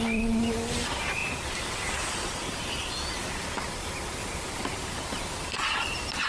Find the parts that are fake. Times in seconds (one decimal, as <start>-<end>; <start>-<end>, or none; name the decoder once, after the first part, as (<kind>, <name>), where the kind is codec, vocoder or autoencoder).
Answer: none